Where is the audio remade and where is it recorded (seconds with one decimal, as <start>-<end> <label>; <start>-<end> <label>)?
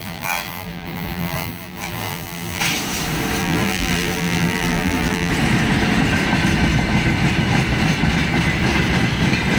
0.0-2.6 remade; 2.6-3.4 recorded; 3.4-5.3 remade; 5.3-9.6 recorded